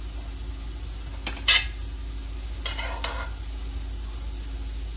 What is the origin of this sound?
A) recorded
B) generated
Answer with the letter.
A